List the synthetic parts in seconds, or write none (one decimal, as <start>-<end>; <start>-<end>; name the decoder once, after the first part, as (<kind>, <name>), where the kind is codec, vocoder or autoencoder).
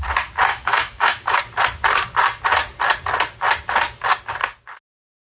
0.5-1.4 (autoencoder, DAC-VAE)